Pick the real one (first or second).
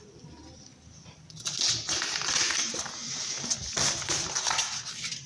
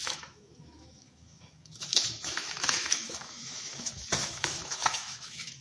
first